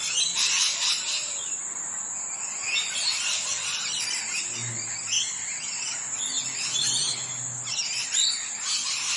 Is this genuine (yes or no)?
yes